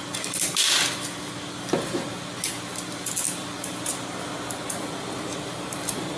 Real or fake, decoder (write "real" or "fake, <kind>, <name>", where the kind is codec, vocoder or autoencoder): real